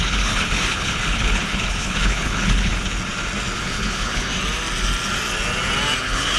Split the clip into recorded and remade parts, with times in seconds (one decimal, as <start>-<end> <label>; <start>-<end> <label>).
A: 0.0-2.7 remade; 2.7-3.6 recorded; 3.6-4.3 remade; 4.3-6.0 recorded; 6.0-6.4 remade